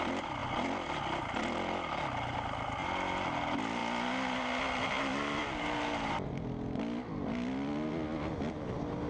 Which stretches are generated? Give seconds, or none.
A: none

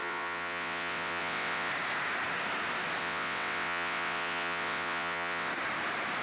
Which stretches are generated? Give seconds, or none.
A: 0.0-1.7; 3.0-5.5

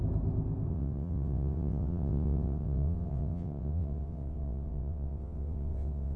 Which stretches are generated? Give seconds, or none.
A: 0.7-6.2

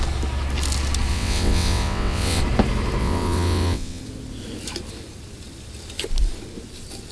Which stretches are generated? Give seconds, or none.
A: 1.1-2.4; 3.0-4.0